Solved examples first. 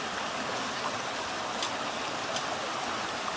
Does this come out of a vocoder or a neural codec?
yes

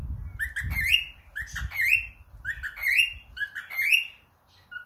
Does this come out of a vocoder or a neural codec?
no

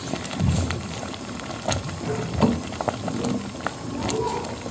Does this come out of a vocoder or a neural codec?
no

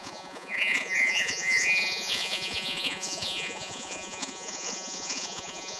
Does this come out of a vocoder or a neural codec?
yes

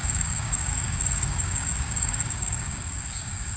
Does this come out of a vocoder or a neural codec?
yes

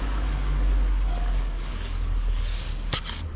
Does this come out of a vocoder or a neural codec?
yes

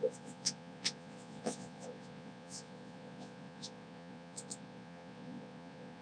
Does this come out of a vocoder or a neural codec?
yes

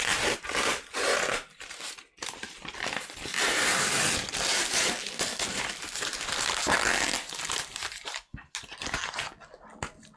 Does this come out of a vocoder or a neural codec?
no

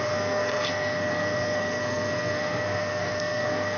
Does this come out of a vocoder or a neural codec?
yes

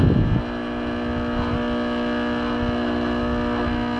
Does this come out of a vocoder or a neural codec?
no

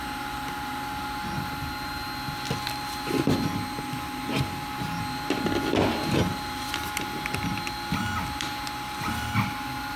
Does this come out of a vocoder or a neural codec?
no